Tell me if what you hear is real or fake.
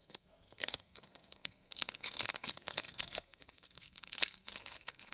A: fake